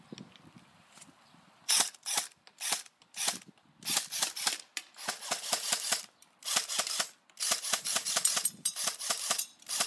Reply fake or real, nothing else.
fake